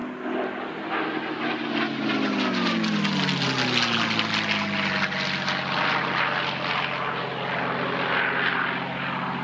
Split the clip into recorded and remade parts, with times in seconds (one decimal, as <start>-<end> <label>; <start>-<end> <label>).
0.0-9.4 recorded